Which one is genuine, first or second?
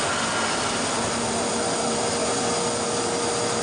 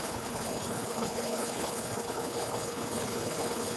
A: first